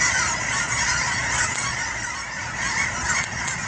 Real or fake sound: fake